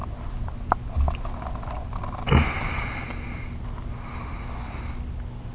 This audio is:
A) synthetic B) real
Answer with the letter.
B